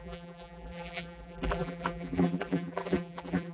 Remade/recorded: remade